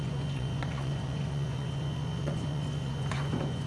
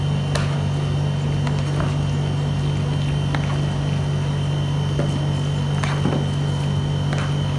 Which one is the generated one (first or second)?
first